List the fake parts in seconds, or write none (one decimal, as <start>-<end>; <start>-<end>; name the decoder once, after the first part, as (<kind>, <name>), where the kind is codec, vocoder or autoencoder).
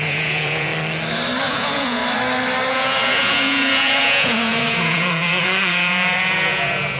0.0-0.7 (vocoder, Vocos); 1.5-2.0; 2.7-7.0